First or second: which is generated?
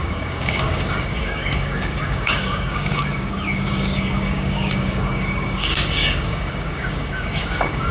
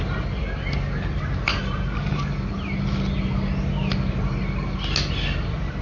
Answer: first